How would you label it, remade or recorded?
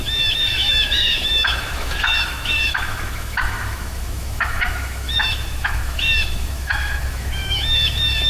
remade